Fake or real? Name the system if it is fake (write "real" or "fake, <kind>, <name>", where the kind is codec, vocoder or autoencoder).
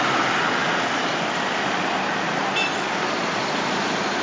real